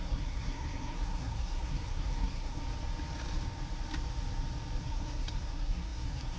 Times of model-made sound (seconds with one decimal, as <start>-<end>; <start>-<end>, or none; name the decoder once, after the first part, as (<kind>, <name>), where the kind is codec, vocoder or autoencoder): 0.0-2.6 (codec, SNAC); 4.8-6.4